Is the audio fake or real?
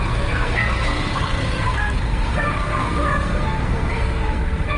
fake